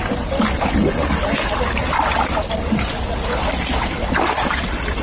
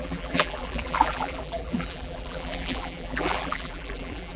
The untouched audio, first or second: first